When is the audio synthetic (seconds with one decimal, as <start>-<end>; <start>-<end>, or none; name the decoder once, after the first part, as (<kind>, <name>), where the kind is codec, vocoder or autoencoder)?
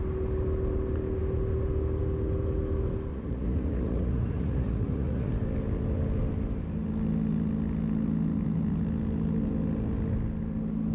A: 3.1-5.3 (vocoder, Vocos)